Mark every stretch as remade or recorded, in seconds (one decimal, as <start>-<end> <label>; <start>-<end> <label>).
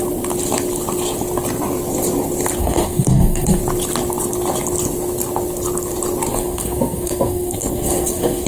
0.0-2.6 recorded; 2.6-3.6 remade; 3.6-6.3 recorded; 6.3-8.5 remade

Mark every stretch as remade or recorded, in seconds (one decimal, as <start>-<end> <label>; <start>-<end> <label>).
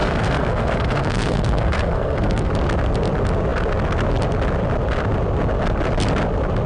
0.0-2.5 remade; 2.5-6.7 recorded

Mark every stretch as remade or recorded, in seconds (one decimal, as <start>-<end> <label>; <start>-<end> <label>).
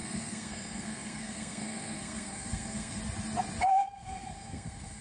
0.0-3.0 remade; 3.0-3.7 recorded; 3.7-5.0 remade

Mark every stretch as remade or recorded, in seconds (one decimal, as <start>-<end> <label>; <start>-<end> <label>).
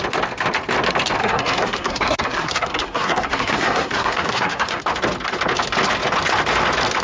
0.0-1.2 recorded; 1.2-4.8 remade; 4.8-7.0 recorded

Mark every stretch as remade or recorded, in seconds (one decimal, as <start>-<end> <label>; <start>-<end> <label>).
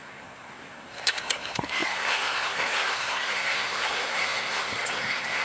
0.0-5.4 remade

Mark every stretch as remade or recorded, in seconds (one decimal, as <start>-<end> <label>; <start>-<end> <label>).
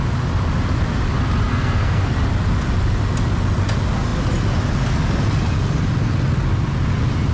0.0-1.5 recorded; 1.5-2.1 remade; 2.1-7.3 recorded